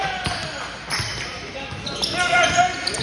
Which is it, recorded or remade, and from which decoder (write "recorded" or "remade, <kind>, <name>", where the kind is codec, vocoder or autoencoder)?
recorded